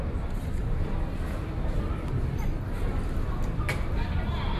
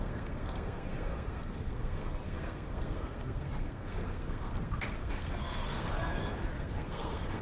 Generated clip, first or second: second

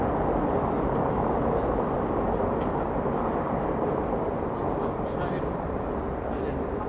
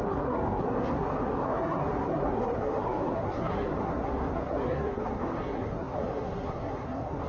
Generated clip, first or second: second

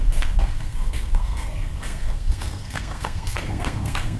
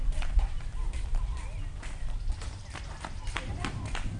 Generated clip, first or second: first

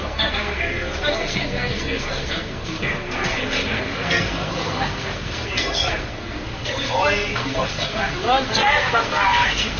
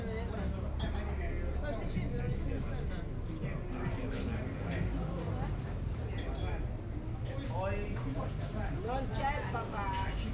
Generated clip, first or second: first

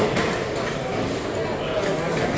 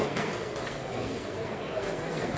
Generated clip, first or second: second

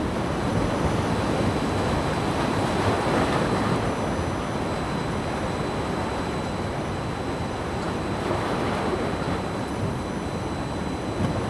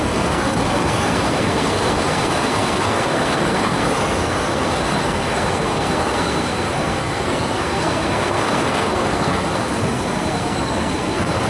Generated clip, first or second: second